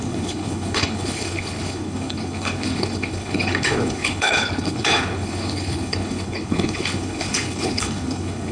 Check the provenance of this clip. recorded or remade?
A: remade